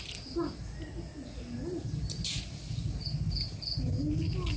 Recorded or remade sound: recorded